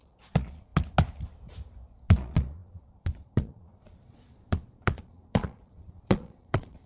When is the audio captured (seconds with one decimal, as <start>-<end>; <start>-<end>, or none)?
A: 0.7-1.9